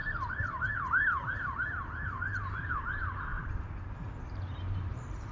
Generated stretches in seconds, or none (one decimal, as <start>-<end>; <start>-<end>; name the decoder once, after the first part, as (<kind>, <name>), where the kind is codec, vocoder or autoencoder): 2.2-5.3 (vocoder, BigVGAN v2)